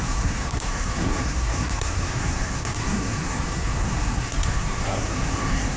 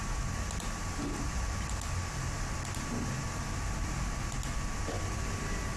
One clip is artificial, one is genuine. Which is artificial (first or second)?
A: first